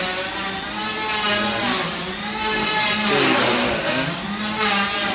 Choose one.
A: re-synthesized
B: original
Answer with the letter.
B